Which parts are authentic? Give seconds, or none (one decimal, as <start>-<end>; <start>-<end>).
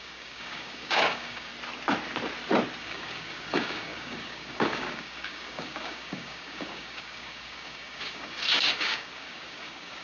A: 1.5-2.8